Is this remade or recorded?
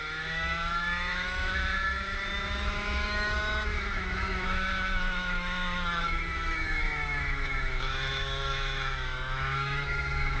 remade